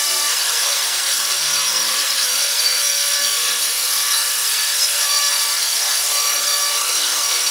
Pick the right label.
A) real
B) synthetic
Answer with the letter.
B